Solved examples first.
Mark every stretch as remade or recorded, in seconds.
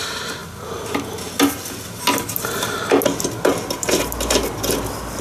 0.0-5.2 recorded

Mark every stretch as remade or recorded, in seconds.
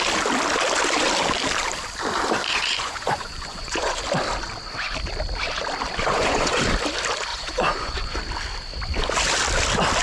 0.0-2.5 recorded; 2.5-4.0 remade; 4.0-6.0 recorded; 6.0-6.6 remade; 6.6-7.3 recorded; 7.3-8.2 remade; 8.2-10.0 recorded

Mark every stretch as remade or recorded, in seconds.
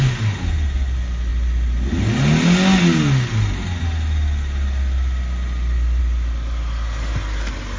0.0-7.8 recorded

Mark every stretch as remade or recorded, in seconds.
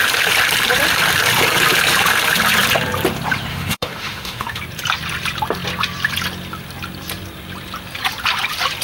0.0-3.5 recorded; 3.5-4.6 remade; 4.6-8.8 recorded